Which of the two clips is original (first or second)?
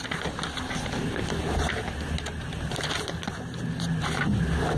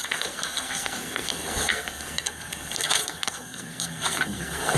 first